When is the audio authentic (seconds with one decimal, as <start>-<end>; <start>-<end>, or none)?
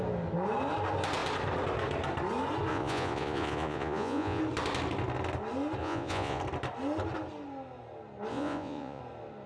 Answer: 0.0-2.7; 4.4-5.8; 6.4-8.3; 9.0-9.5